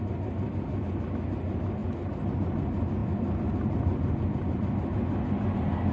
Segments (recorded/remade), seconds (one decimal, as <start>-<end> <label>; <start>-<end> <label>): 0.0-5.9 recorded